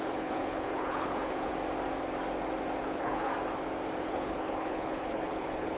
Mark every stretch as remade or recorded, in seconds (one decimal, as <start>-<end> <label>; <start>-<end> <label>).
0.0-1.5 remade; 1.5-2.8 recorded; 2.8-3.3 remade; 3.3-4.0 recorded; 4.0-5.8 remade